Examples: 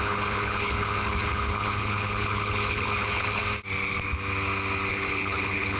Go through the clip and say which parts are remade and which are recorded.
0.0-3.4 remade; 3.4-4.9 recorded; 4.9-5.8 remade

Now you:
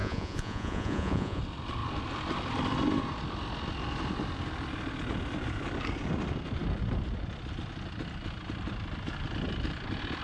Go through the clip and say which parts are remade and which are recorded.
0.0-1.4 remade; 1.4-10.2 recorded